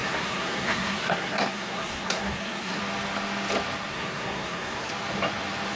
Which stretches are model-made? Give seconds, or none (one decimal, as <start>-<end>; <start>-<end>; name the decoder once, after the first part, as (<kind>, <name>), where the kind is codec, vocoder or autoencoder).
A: 0.0-2.8 (codec, SNAC); 3.9-4.9

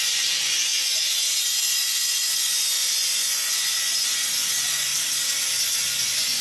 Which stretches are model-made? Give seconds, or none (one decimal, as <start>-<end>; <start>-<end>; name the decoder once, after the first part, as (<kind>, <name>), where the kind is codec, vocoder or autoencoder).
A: 0.0-4.9 (vocoder, Vocos); 5.8-6.4

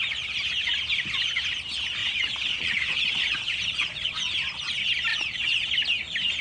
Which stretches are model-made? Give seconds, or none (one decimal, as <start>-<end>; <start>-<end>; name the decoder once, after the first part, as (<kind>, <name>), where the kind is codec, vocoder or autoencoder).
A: 2.0-4.3 (vocoder, Vocos); 5.1-5.7

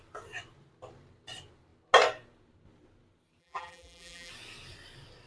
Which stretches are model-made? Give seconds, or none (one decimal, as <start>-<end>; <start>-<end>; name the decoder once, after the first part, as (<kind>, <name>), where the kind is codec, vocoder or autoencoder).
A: 3.4-4.3 (vocoder, BigVGAN v2)

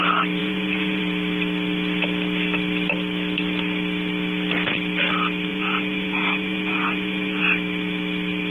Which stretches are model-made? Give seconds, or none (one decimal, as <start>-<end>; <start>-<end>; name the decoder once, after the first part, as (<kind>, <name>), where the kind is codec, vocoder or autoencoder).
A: 0.4-1.0 (vocoder, Vocos); 5.5-7.4

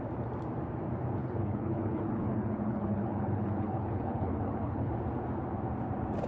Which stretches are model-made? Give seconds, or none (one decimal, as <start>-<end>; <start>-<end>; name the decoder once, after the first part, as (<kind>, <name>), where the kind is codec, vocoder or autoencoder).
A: 1.2-4.9 (codec, HILCodec)

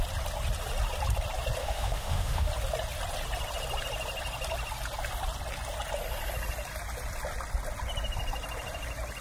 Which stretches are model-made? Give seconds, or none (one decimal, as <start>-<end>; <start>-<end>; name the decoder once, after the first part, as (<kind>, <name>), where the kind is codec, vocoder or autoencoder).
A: 1.6-2.5 (autoencoder, DAC-VAE)